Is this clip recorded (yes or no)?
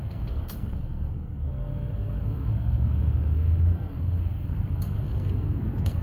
no